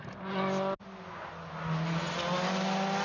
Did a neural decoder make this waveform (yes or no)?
no